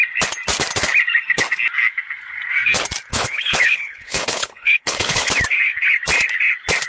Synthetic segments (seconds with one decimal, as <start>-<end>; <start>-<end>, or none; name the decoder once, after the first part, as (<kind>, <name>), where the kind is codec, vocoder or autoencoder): 3.1-5.3 (codec, HILCodec)